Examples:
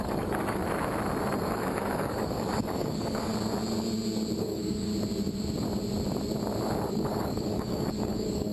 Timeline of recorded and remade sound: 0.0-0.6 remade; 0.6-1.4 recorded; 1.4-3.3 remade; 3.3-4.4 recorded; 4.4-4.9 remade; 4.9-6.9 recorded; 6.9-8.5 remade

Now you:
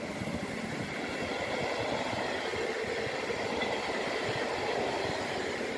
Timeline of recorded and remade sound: 0.0-5.8 recorded

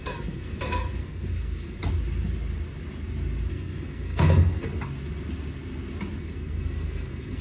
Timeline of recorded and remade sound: 0.0-1.8 remade; 1.8-3.5 recorded; 3.5-4.7 remade; 4.7-6.2 recorded; 6.2-7.4 remade

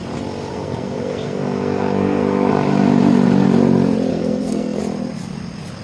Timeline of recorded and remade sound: 0.0-0.5 recorded; 0.5-2.5 remade; 2.5-4.1 recorded; 4.1-4.8 remade; 4.8-5.8 recorded

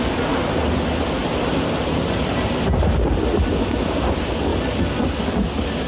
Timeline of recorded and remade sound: 0.0-5.9 recorded

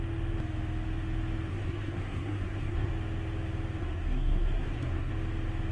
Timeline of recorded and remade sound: 0.0-1.5 recorded; 1.5-2.9 remade; 2.9-3.8 recorded; 3.8-5.1 remade; 5.1-5.7 recorded

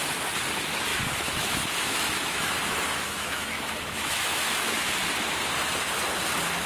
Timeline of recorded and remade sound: 0.0-0.9 recorded; 0.9-4.9 remade; 4.9-6.7 recorded